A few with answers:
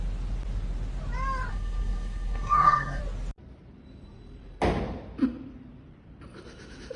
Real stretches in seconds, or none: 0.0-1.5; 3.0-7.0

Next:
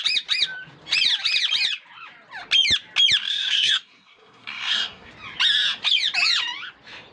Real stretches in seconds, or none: 0.0-3.3; 5.1-7.1

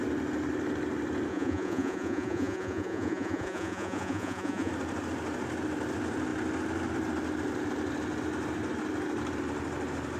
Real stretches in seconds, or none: 0.0-1.3; 4.7-10.2

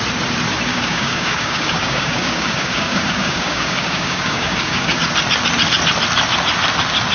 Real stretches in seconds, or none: 0.0-0.7; 5.0-7.1

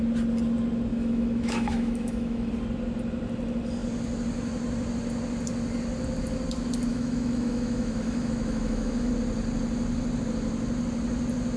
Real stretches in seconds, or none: 0.0-0.9; 2.5-6.9; 9.1-11.6

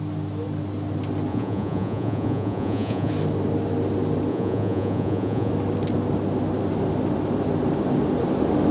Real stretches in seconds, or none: 0.0-1.3; 3.1-4.3; 5.5-8.7

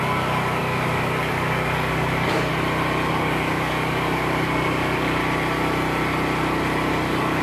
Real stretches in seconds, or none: 2.5-3.1; 5.2-6.9